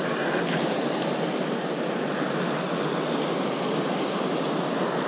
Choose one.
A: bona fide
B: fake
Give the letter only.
A